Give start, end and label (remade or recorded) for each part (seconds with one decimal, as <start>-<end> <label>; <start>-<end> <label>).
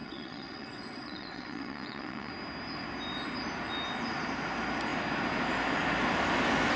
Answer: 0.0-2.3 remade; 2.3-6.8 recorded